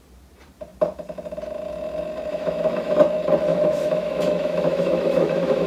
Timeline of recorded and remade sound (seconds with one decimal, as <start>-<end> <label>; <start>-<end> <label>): 0.0-2.3 recorded; 2.3-3.0 remade; 3.0-3.5 recorded; 3.5-5.7 remade